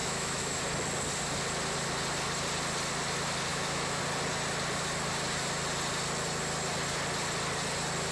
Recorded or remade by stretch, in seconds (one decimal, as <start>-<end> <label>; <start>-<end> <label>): 0.0-0.6 remade; 0.6-3.5 recorded; 3.5-4.0 remade; 4.0-8.1 recorded